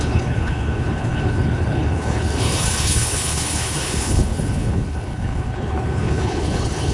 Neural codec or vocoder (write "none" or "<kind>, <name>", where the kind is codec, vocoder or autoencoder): codec, HILCodec